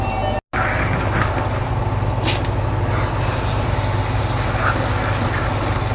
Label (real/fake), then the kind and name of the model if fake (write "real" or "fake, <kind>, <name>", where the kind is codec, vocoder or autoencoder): real